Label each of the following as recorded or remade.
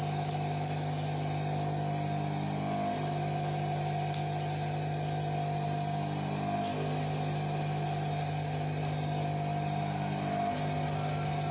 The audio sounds recorded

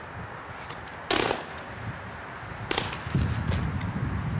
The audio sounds recorded